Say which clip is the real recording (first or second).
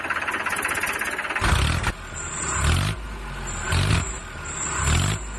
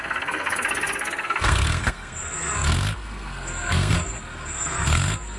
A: first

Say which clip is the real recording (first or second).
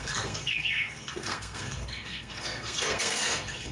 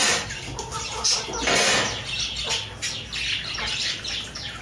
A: second